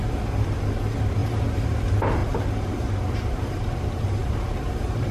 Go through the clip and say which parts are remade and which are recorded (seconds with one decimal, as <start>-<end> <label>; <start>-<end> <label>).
0.0-1.2 recorded; 1.2-1.8 remade; 1.8-2.2 recorded; 2.2-3.8 remade; 3.8-4.2 recorded; 4.2-5.1 remade